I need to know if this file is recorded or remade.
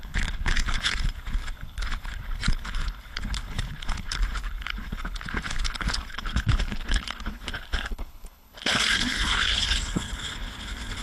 remade